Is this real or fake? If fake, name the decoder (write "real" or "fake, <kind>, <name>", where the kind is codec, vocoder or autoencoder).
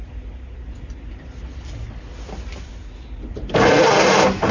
real